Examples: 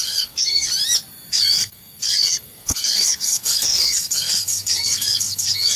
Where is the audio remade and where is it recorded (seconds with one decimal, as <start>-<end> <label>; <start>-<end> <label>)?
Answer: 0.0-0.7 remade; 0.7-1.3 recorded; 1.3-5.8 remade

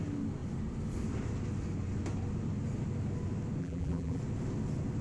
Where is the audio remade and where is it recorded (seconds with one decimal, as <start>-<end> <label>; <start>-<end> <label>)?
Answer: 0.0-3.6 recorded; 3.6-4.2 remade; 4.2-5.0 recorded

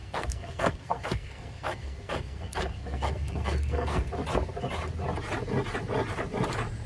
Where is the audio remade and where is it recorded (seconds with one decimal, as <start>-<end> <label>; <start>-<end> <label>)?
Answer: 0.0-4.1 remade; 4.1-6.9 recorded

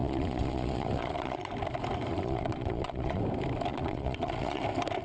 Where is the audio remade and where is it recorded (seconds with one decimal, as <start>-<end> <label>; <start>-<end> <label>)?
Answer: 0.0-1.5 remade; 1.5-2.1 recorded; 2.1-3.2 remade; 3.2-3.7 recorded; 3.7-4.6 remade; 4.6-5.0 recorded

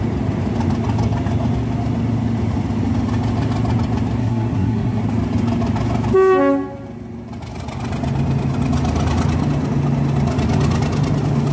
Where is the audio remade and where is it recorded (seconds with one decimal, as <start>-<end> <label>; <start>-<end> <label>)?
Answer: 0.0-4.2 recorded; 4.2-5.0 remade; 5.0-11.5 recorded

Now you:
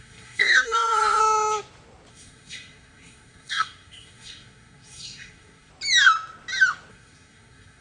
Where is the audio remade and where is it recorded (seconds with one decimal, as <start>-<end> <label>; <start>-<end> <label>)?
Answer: 0.0-1.2 remade; 1.2-2.1 recorded; 2.1-5.7 remade; 5.7-6.9 recorded; 6.9-7.8 remade

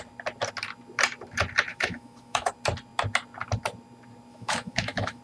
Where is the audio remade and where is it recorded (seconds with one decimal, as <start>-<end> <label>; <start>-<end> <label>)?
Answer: 0.0-1.7 recorded; 1.7-2.5 remade; 2.5-4.3 recorded; 4.3-5.2 remade